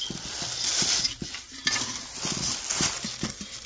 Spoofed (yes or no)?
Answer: no